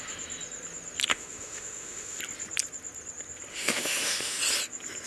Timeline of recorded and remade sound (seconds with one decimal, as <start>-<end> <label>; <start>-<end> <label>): 0.0-1.1 recorded; 1.1-2.2 remade; 2.2-3.5 recorded; 3.5-4.4 remade; 4.4-5.1 recorded